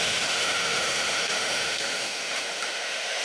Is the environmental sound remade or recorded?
remade